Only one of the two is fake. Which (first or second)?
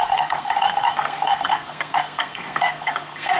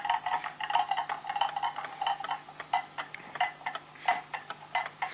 first